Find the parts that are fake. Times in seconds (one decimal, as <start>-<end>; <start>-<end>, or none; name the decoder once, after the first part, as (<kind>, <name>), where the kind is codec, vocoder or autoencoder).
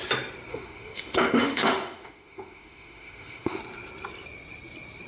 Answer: 0.5-3.6 (autoencoder, DAC-VAE)